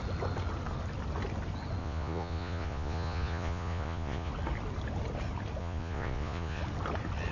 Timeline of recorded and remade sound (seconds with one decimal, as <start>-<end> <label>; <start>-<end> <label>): 0.0-1.8 recorded; 1.8-4.3 remade; 4.3-5.6 recorded; 5.6-6.6 remade; 6.6-7.3 recorded